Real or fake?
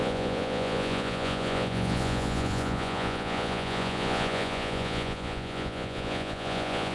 fake